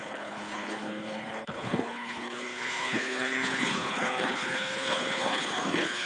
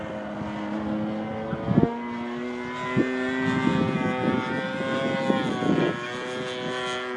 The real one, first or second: second